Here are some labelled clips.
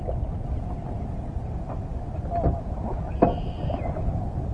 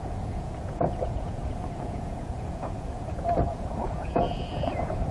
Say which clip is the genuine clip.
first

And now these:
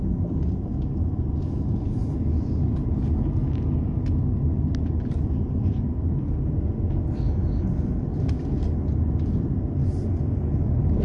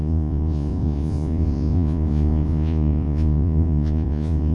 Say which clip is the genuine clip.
first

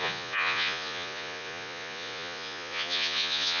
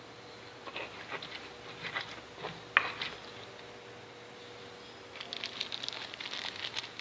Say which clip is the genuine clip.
second